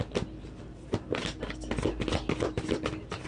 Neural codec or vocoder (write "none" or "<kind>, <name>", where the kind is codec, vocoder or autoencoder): none